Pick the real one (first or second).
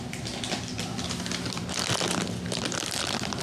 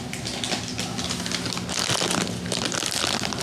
second